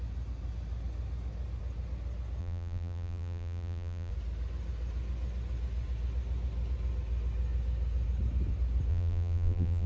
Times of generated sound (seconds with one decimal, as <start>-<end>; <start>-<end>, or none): 2.4-4.1; 8.9-9.9